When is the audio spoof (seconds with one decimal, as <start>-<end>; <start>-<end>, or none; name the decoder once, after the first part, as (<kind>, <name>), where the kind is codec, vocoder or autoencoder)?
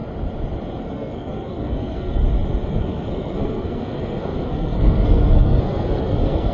0.8-2.2 (codec, SNAC); 2.7-6.5